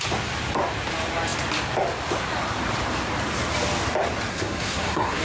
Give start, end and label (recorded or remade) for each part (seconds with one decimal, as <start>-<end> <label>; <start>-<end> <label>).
0.0-4.3 recorded; 4.3-5.2 remade